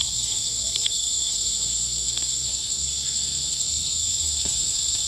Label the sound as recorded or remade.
remade